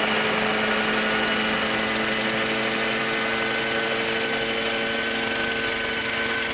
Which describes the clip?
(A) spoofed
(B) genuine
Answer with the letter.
B